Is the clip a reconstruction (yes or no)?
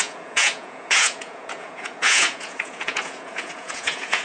yes